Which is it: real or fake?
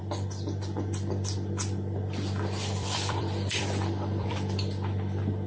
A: fake